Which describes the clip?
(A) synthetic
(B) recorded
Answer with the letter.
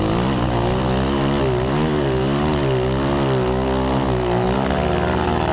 B